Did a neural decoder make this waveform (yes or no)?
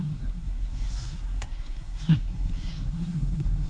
yes